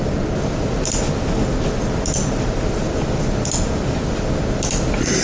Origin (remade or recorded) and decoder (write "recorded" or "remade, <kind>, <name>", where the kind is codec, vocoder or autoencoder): recorded